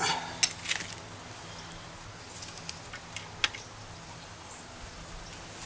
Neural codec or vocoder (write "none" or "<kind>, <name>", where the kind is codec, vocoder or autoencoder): none